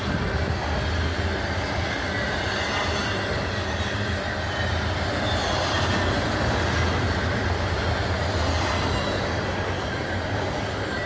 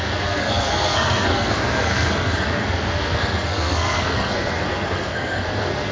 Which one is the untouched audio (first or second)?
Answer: first